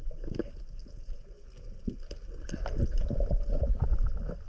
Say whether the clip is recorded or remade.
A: recorded